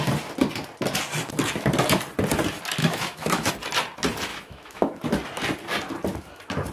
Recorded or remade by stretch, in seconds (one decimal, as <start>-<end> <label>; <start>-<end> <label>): 0.0-2.8 recorded; 2.8-3.5 remade; 3.5-4.3 recorded; 4.3-5.0 remade; 5.0-6.7 recorded